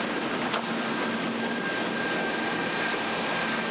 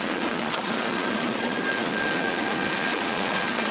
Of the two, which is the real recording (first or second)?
first